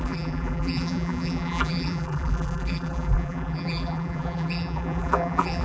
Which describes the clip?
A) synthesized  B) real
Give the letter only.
A